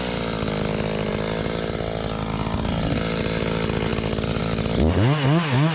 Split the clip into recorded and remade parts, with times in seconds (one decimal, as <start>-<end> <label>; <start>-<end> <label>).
0.0-5.7 recorded